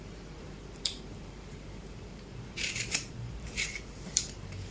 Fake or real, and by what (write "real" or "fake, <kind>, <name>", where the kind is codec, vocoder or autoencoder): fake, vocoder, BigVGAN v2